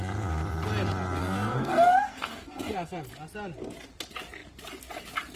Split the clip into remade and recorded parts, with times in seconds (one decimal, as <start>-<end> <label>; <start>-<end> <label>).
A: 0.0-1.2 recorded; 1.2-3.1 remade; 3.1-5.4 recorded